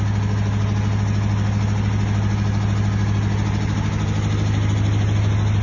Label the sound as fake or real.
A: real